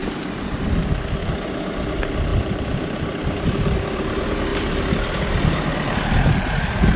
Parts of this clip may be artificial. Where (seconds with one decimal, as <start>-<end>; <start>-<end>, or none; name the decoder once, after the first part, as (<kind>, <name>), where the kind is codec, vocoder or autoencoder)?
0.0-0.6 (vocoder, BigVGAN v2); 1.2-1.7; 2.3-3.2; 4.5-5.2